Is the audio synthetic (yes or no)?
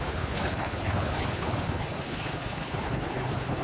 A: yes